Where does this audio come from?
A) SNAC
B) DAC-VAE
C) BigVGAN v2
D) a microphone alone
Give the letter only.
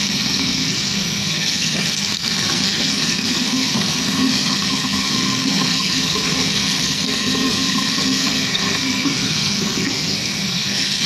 A